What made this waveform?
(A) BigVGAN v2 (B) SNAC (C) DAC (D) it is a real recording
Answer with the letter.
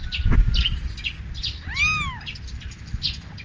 D